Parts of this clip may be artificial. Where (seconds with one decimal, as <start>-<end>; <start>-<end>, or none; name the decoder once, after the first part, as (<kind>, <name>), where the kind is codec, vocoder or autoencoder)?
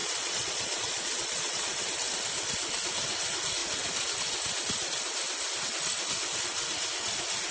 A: 0.0-1.8 (vocoder, Vocos)